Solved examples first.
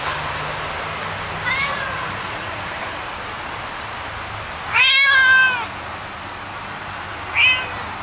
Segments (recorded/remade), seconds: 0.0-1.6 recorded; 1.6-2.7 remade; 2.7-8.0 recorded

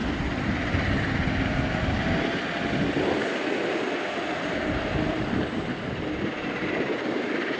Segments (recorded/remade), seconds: 0.0-4.4 recorded; 4.4-7.6 remade

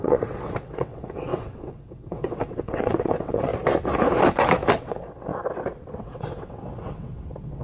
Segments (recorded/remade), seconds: 0.0-3.5 remade; 3.5-4.7 recorded; 4.7-5.3 remade; 5.3-6.0 recorded; 6.0-7.6 remade

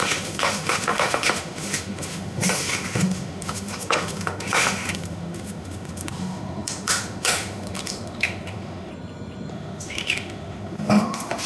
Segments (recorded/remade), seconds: 0.0-8.9 remade; 8.9-9.5 recorded; 9.5-11.5 remade

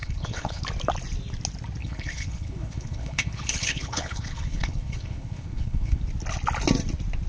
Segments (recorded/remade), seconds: 0.0-0.6 remade; 0.6-1.8 recorded; 1.8-6.0 remade; 6.0-7.3 recorded

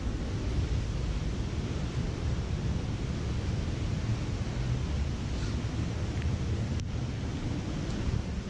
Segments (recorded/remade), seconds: 0.0-8.5 recorded

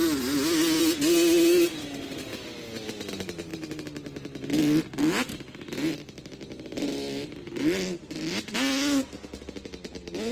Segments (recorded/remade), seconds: 0.0-10.3 recorded

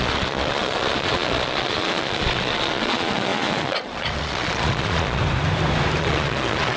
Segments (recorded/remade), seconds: 0.0-5.2 remade; 5.2-6.0 recorded; 6.0-6.8 remade